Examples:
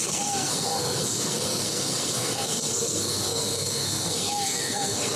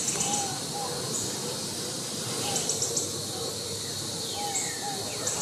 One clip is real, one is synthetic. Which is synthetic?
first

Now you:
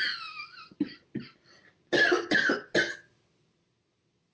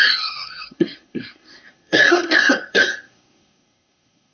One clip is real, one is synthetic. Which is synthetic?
second